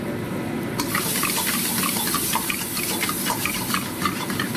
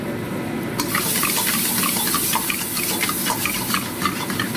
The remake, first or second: first